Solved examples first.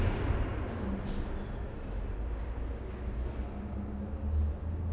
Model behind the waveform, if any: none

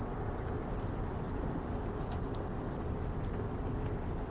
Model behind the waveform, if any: none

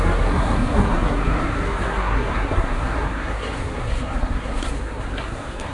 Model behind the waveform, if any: codec, SNAC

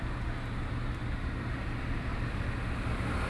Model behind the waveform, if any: none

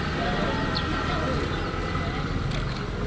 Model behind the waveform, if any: none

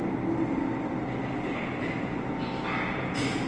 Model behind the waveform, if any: none